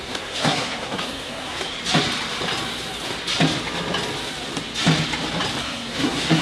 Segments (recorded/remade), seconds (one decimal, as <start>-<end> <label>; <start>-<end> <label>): 0.0-1.8 remade; 1.8-5.6 recorded; 5.6-6.4 remade

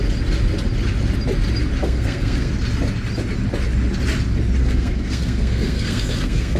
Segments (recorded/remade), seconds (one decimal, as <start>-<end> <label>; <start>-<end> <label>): 0.0-1.8 recorded; 1.8-2.5 remade; 2.5-4.6 recorded; 4.6-6.6 remade

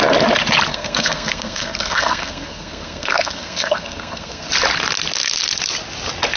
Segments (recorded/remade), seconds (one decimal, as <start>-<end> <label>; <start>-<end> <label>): 0.0-0.7 recorded; 0.7-4.5 remade; 4.5-6.4 recorded

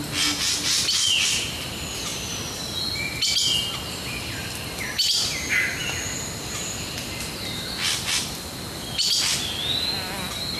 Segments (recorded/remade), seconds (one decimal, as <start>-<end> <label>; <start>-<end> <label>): 0.0-10.6 recorded

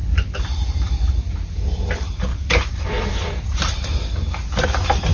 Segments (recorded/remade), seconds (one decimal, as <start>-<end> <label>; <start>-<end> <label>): 0.0-1.1 remade; 1.1-2.3 recorded; 2.3-4.1 remade; 4.1-5.1 recorded

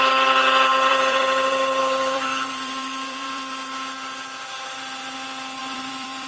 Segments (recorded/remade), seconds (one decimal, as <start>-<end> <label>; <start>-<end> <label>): 0.0-0.9 recorded; 0.9-3.5 remade; 3.5-5.6 recorded; 5.6-6.3 remade